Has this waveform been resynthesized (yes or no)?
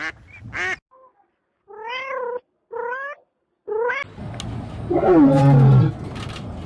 no